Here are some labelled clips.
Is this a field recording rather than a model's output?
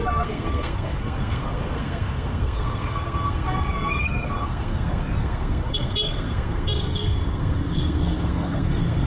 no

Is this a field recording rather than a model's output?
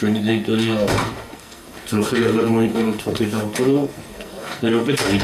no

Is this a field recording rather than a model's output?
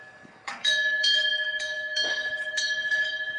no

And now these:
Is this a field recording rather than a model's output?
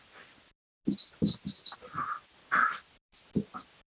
yes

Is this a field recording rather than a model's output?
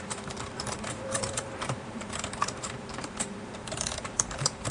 no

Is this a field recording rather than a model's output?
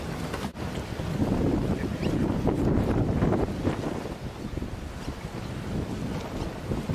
yes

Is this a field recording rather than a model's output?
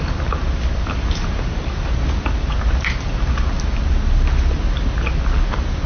yes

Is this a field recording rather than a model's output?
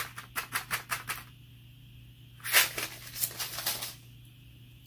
yes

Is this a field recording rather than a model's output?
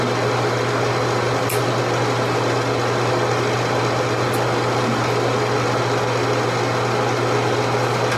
yes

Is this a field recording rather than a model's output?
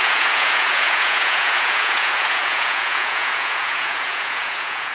no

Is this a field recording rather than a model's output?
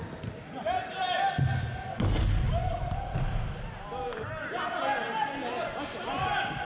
yes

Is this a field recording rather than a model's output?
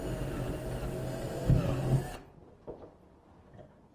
yes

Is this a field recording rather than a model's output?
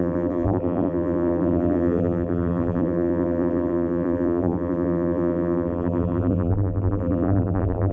no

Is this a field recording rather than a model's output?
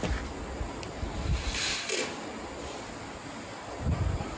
yes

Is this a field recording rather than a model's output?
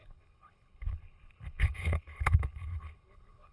no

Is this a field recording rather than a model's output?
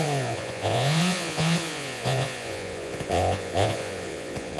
no